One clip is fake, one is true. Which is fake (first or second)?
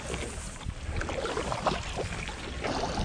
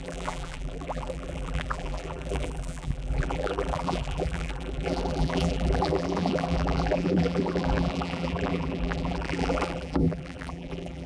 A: second